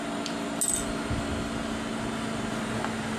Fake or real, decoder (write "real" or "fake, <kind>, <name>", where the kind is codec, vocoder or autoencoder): real